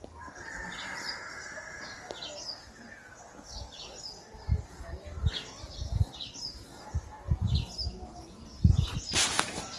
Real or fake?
real